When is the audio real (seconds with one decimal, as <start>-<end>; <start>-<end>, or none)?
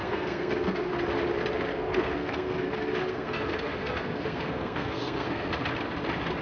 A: 0.9-1.7; 5.5-6.4